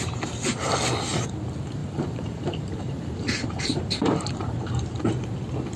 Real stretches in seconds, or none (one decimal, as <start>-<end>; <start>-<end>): 0.0-1.8; 5.1-5.8